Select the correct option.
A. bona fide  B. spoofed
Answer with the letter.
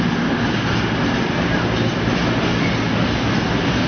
A